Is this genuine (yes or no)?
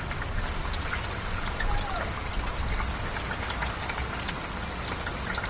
yes